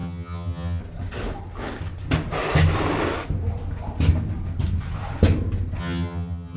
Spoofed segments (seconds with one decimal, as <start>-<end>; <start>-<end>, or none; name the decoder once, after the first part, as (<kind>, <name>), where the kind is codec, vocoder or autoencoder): 0.0-0.8 (vocoder, HiFi-GAN); 5.8-6.6